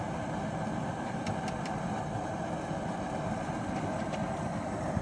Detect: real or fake fake